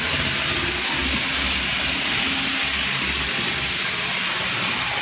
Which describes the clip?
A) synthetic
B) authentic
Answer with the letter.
B